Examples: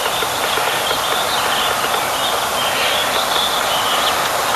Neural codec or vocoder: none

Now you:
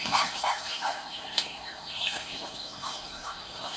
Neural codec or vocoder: codec, SNAC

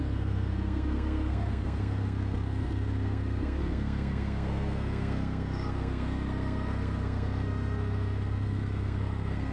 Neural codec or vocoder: codec, SNAC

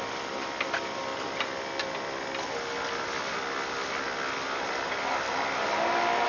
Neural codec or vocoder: none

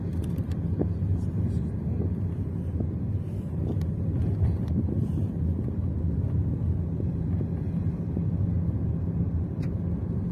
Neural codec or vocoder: none